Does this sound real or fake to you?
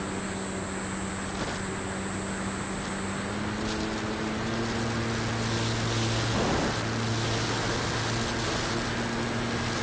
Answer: real